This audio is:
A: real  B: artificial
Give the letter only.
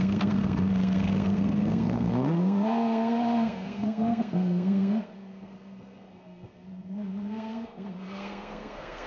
B